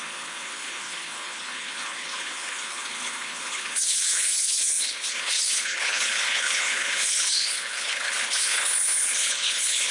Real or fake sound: fake